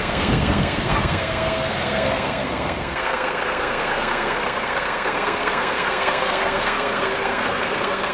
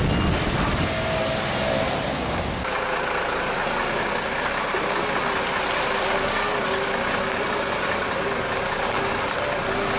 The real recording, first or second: second